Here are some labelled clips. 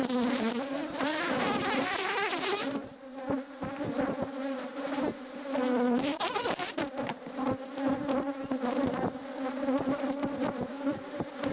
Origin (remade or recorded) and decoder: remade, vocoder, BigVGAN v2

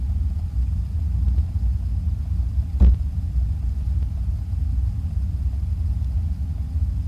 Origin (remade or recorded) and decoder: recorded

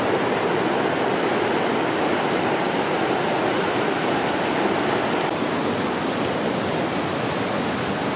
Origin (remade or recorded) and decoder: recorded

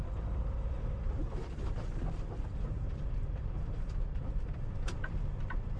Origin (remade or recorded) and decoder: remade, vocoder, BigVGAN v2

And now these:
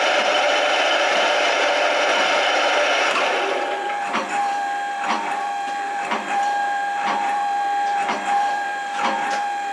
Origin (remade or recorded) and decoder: remade, vocoder, BigVGAN v2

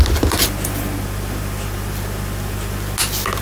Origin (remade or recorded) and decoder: recorded